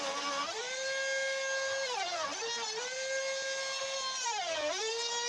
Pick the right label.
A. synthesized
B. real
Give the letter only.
B